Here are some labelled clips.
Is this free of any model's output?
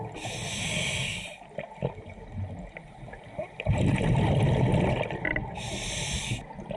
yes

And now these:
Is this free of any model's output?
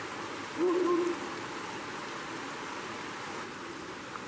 yes